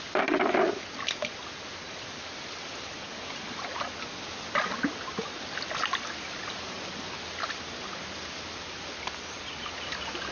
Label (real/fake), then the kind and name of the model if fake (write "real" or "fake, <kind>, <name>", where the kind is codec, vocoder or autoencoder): real